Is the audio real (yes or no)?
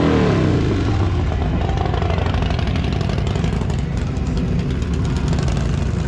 yes